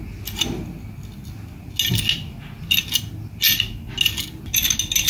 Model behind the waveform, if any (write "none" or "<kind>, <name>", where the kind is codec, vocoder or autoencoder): none